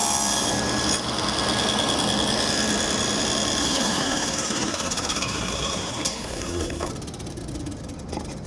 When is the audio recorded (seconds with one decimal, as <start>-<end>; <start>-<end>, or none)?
0.0-3.6; 6.9-8.5